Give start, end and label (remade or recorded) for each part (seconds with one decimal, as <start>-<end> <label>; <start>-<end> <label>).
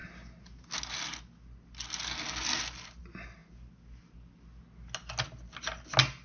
0.0-6.2 recorded